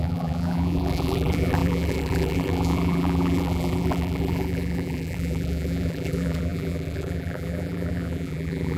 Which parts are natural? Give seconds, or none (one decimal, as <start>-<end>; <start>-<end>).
none

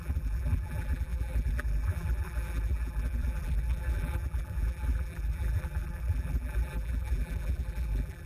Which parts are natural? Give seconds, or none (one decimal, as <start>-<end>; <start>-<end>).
none

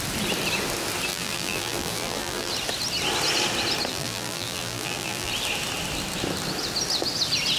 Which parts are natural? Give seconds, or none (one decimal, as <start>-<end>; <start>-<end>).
0.0-1.1; 2.5-3.9; 5.3-7.6

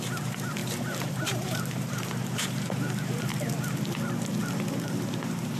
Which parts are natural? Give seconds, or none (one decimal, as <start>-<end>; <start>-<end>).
0.6-1.1; 3.3-4.7

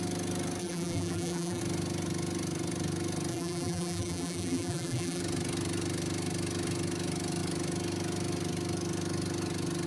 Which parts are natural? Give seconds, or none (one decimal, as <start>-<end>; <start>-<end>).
0.0-0.6; 1.6-3.3; 5.2-9.9

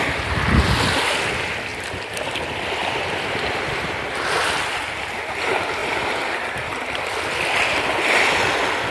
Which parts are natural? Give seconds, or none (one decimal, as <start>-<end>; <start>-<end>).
0.0-1.7; 2.4-2.8; 5.1-5.8; 7.0-8.9

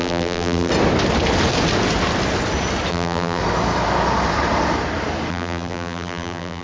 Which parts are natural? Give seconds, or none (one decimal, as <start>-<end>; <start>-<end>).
0.7-2.9; 3.4-5.3

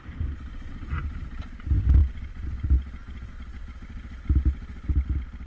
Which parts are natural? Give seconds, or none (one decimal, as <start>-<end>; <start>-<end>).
1.6-5.5